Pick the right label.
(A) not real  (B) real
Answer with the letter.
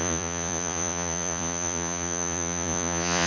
A